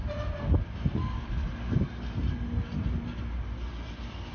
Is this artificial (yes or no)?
no